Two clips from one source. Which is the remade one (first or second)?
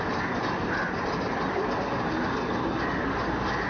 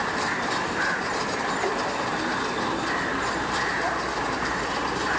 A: second